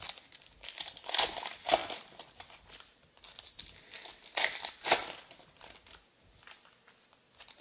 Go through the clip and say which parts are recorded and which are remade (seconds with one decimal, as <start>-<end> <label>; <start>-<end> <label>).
0.0-7.6 recorded